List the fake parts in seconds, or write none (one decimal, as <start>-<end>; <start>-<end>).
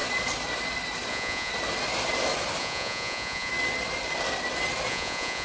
1.1-1.5; 2.6-3.5; 4.9-5.4